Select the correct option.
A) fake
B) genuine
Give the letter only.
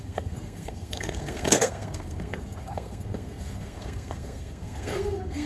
A